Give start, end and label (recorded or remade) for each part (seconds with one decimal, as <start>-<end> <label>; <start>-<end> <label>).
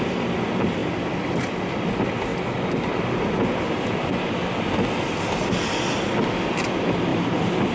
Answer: 0.0-0.8 recorded; 0.8-1.4 remade; 1.4-2.3 recorded; 2.3-3.1 remade; 3.1-7.1 recorded; 7.1-7.7 remade